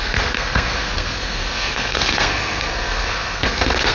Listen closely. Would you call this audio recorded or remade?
remade